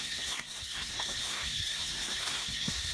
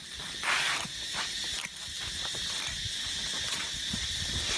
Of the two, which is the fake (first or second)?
first